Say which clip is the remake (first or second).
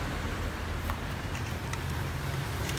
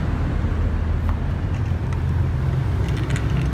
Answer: first